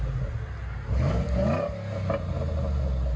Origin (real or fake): real